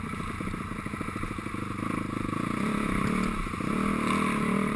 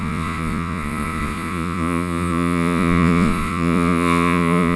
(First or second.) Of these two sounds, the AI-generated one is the second